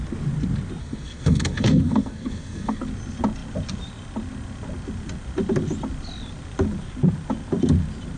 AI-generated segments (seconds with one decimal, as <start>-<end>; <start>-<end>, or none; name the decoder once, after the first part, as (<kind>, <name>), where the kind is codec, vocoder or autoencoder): 0.8-2.8 (codec, SNAC)